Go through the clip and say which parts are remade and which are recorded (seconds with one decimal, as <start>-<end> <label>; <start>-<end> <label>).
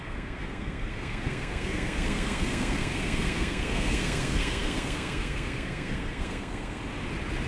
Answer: 0.0-6.8 remade; 6.8-7.5 recorded